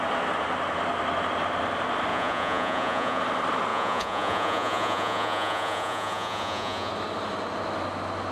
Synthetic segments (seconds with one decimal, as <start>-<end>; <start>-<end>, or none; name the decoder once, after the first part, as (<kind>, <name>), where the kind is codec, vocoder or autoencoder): 2.1-3.2 (vocoder, Vocos); 3.7-6.9